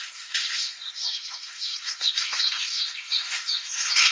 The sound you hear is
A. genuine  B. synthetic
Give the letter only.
B